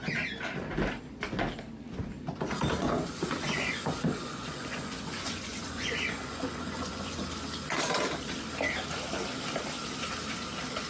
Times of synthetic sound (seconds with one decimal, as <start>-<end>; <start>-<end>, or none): 2.8-7.2